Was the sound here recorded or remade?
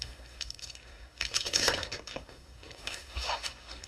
remade